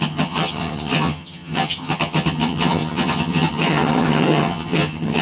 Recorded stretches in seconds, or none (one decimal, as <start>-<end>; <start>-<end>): none